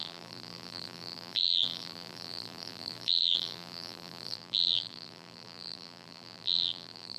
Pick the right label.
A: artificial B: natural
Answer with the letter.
A